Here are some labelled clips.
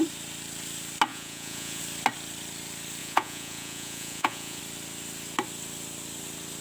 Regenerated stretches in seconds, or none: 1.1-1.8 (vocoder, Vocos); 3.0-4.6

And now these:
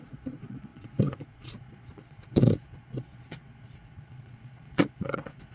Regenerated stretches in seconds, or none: 0.0-5.5 (vocoder, Vocos)

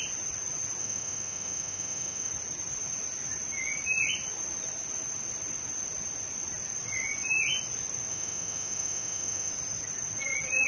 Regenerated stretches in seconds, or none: 0.8-2.3 (autoencoder, DAC-VAE); 8.1-9.5

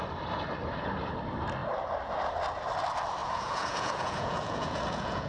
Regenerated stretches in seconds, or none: 3.2-5.3 (vocoder, Vocos)